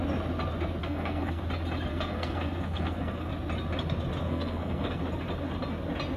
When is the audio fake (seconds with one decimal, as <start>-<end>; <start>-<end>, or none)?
0.8-1.4; 1.9-3.3; 4.2-5.0